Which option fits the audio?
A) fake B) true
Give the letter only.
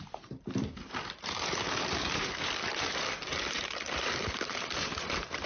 A